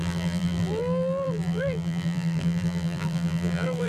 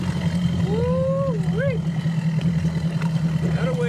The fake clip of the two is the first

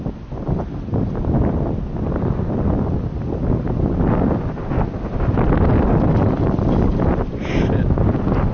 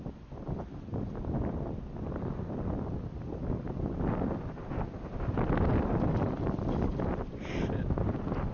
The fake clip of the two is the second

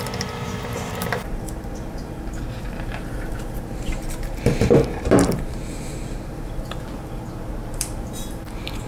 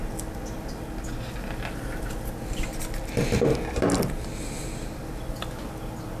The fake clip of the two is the first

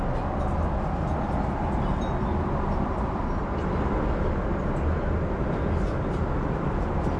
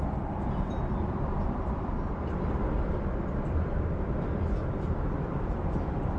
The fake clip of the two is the second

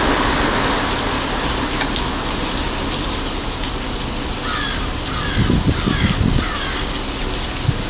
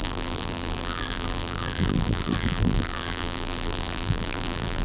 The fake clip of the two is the second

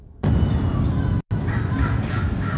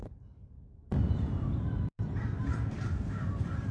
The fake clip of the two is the second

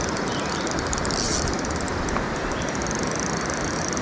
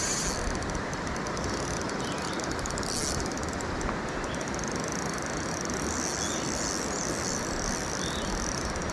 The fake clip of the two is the first